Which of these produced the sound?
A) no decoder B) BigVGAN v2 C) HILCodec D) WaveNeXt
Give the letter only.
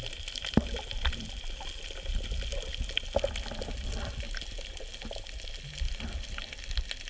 A